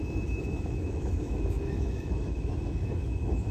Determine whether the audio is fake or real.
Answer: fake